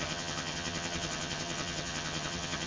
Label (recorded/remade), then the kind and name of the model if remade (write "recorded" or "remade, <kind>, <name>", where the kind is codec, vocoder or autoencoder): remade, vocoder, HiFi-GAN